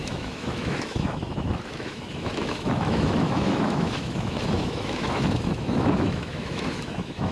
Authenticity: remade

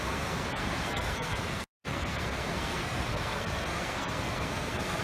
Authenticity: remade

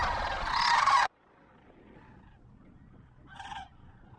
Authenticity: remade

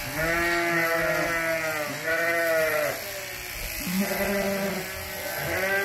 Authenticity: recorded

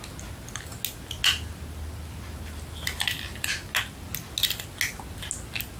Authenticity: recorded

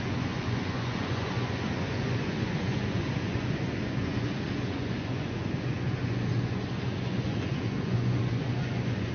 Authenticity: remade